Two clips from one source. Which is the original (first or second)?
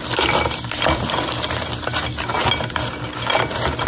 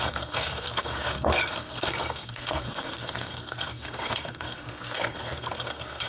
first